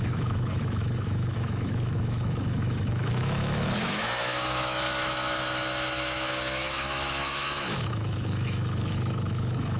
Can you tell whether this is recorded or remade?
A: remade